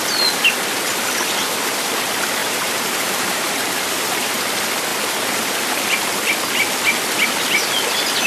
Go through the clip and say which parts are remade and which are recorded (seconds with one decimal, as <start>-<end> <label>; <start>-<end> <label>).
0.0-2.4 recorded; 2.4-4.4 remade; 4.4-8.3 recorded